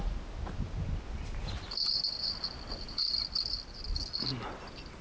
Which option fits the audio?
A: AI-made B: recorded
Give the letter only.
B